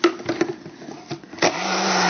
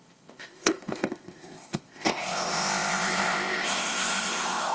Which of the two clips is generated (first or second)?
second